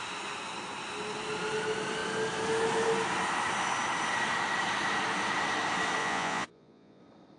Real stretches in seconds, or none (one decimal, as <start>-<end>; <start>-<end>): 0.0-6.0; 7.0-7.4